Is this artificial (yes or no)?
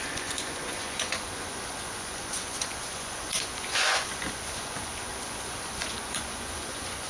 yes